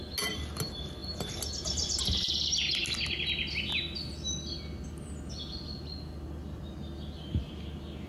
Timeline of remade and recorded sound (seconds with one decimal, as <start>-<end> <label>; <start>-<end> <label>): 0.0-8.1 recorded